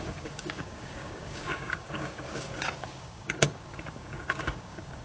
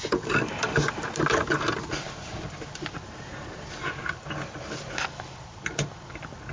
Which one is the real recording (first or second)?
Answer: second